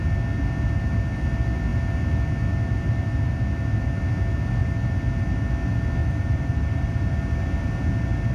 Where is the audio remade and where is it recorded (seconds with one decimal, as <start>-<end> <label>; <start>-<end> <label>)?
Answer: 0.0-6.0 recorded; 6.0-7.1 remade; 7.1-8.3 recorded